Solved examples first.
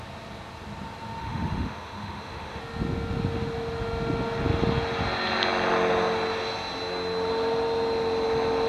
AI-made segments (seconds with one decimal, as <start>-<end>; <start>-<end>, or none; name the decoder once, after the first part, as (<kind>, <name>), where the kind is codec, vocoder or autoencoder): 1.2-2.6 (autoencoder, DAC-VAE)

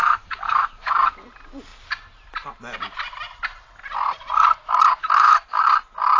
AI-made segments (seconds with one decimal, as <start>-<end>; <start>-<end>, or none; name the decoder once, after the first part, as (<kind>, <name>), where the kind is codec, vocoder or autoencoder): 0.0-0.9 (autoencoder, DAC-VAE); 5.0-5.6

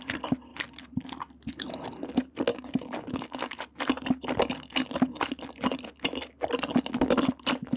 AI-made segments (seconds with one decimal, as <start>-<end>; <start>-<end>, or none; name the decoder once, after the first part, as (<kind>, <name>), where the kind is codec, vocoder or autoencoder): 2.5-3.6 (codec, DAC)